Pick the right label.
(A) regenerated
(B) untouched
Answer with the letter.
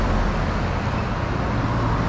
B